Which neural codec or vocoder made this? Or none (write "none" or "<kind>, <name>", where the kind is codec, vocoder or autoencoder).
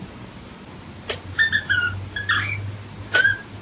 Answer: none